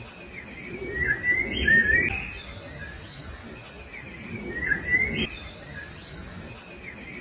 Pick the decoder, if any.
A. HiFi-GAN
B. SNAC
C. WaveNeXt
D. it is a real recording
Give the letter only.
D